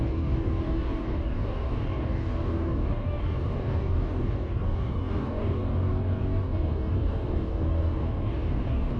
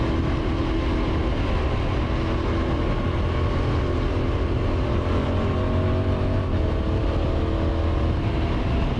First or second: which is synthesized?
first